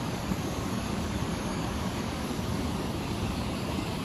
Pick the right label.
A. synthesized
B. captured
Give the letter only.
A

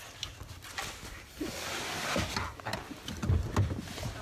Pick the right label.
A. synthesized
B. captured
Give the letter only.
B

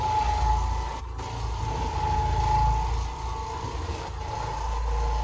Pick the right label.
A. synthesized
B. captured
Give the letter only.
B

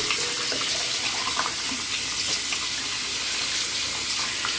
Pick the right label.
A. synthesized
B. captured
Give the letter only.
B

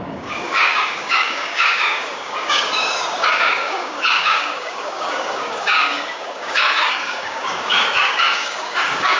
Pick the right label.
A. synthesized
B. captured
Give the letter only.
A